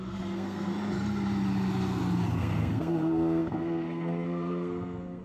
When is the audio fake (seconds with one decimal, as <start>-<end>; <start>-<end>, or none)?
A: 0.0-0.7; 2.4-5.2